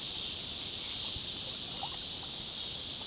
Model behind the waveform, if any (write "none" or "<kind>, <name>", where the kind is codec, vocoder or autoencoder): none